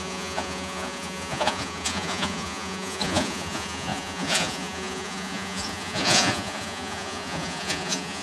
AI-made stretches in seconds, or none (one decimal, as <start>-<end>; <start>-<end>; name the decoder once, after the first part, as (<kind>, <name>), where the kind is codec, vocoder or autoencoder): 0.0-8.2 (vocoder, Vocos)